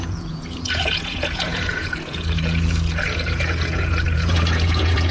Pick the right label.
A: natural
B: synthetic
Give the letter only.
B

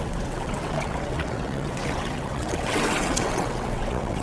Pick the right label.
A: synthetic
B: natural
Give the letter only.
A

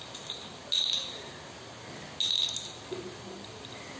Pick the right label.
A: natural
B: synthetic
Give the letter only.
A